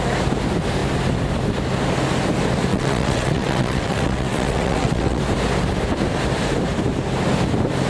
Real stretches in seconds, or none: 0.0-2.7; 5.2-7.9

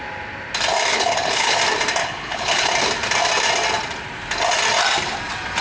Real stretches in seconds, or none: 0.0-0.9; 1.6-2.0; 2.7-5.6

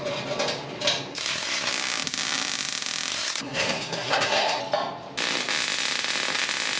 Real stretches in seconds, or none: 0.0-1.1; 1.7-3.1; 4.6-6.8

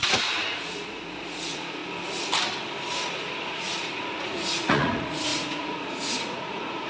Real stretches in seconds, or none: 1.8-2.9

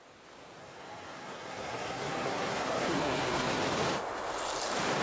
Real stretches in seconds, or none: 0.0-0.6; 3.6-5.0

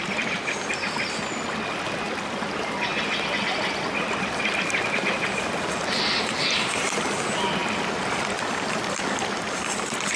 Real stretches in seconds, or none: 0.0-10.2